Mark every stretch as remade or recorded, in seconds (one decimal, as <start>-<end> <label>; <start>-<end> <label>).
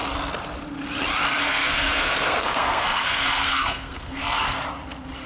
0.0-1.4 recorded; 1.4-4.6 remade; 4.6-5.3 recorded